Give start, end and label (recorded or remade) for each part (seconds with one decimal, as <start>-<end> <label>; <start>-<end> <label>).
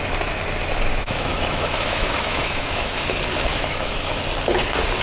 0.0-0.9 recorded; 0.9-3.0 remade; 3.0-3.5 recorded; 3.5-4.2 remade; 4.2-5.0 recorded